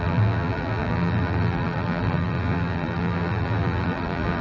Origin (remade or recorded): remade